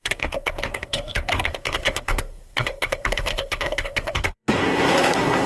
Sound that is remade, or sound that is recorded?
remade